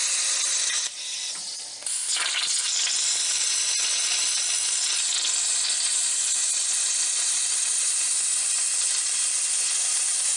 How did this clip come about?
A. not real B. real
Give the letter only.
B